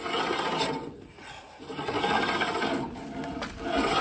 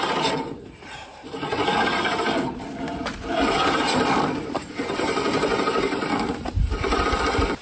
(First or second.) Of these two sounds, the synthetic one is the second